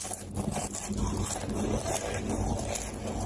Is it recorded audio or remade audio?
recorded